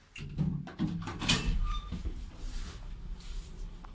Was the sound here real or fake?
fake